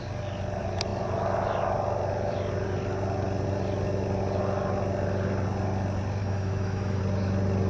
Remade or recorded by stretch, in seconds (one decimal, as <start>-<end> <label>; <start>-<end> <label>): 0.0-6.2 recorded; 6.2-7.0 remade; 7.0-7.7 recorded